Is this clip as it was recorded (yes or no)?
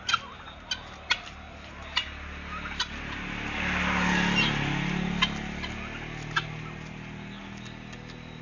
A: yes